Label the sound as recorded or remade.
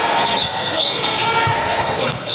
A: remade